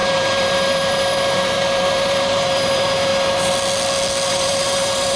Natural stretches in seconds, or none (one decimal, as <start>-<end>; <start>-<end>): 3.1-4.3